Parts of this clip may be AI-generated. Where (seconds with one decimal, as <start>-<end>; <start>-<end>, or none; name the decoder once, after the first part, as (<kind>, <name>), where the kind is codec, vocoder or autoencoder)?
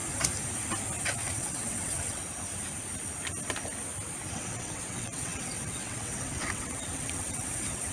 1.0-2.2 (vocoder, WaveNeXt); 4.3-7.9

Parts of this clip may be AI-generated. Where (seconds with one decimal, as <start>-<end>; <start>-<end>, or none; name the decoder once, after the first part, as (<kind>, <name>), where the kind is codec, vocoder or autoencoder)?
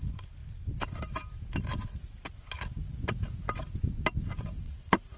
4.6-5.2 (vocoder, WaveNeXt)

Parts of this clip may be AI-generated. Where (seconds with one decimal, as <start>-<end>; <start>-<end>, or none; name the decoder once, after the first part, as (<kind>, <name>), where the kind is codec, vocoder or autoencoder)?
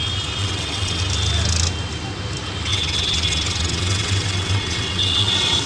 0.4-1.0 (vocoder, WaveNeXt); 2.7-5.7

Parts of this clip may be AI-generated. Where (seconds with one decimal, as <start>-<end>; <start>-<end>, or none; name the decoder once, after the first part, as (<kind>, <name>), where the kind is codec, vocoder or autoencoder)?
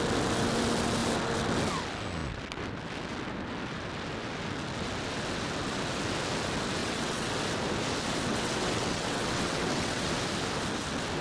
6.8-7.3 (vocoder, WaveNeXt); 8.3-10.1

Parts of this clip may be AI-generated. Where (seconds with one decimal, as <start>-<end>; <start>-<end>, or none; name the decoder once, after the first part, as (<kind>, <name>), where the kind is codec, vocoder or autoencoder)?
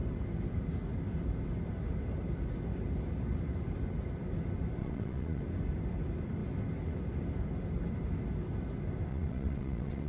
4.8-5.4 (vocoder, WaveNeXt); 9.1-10.1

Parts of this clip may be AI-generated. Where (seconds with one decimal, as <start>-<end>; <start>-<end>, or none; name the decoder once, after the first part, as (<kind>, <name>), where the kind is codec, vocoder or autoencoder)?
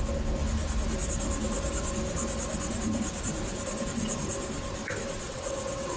5.2-6.0 (vocoder, WaveNeXt)